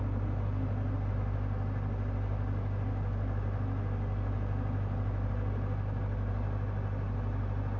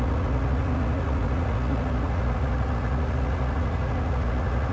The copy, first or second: second